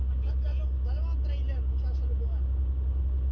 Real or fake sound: real